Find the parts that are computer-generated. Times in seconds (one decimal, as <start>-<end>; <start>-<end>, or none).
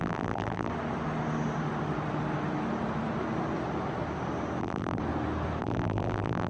0.0-0.7; 4.6-5.0; 5.6-6.5